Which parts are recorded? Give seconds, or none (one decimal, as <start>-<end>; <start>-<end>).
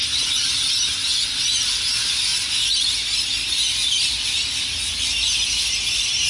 0.0-6.3